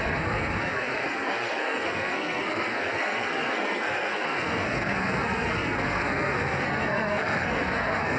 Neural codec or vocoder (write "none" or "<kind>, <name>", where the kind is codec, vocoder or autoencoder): codec, SNAC